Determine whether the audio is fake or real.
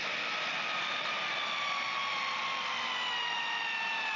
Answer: real